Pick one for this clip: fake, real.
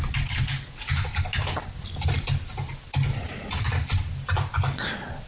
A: real